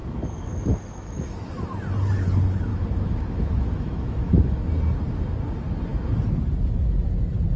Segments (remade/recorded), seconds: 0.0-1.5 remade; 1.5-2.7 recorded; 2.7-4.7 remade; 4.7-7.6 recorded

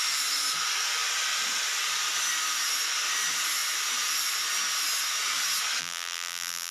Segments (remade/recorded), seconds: 0.0-5.8 recorded; 5.8-6.7 remade

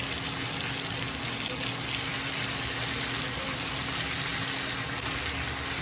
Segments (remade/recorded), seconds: 0.0-5.8 recorded

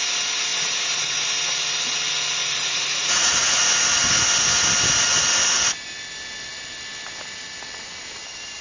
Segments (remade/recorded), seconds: 0.0-0.5 recorded; 0.5-1.3 remade; 1.3-2.4 recorded; 2.4-3.6 remade; 3.6-8.6 recorded

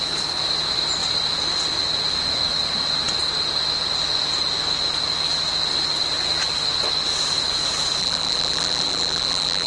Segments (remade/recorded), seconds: 0.0-8.0 recorded; 8.0-9.7 remade